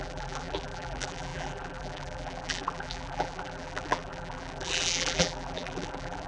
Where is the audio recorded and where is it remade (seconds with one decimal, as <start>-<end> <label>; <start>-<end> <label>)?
0.0-6.3 remade